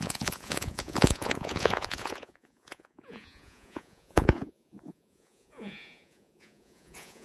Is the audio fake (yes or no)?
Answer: yes